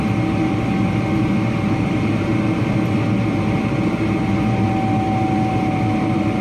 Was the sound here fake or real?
real